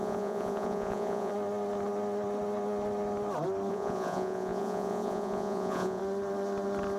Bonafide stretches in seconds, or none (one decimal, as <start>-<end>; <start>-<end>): 1.3-3.7; 6.0-7.0